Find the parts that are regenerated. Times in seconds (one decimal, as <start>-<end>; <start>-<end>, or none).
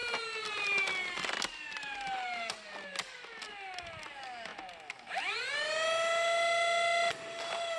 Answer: none